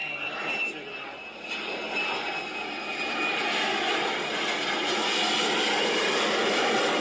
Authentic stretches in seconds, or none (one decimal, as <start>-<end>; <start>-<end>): 0.0-7.0